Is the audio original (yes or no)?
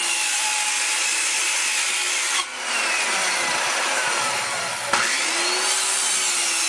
yes